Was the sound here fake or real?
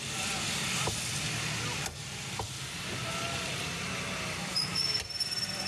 real